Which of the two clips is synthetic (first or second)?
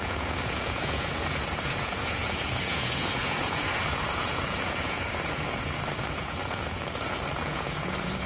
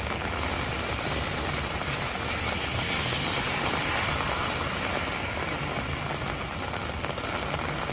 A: first